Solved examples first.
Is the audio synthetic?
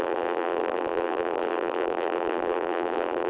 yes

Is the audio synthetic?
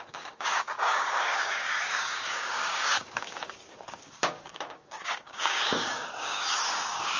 yes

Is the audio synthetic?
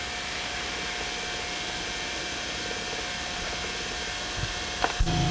no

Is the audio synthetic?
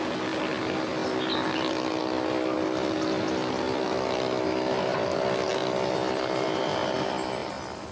no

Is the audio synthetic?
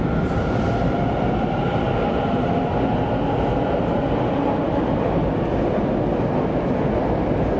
no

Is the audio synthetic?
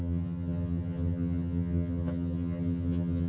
yes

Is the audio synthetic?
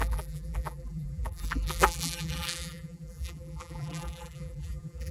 yes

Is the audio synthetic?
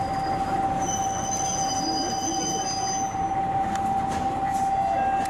no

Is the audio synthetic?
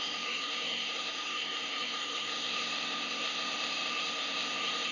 yes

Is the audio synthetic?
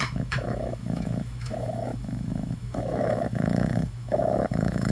yes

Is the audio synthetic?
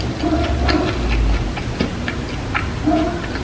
no